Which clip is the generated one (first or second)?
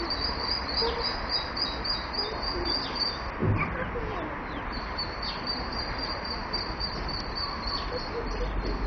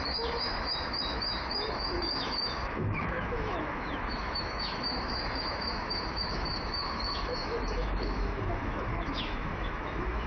second